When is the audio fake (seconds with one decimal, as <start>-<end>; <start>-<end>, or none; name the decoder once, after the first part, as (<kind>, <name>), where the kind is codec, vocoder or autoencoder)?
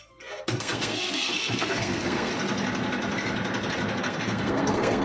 0.0-2.3 (codec, SNAC); 4.0-5.0